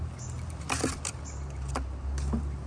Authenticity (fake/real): real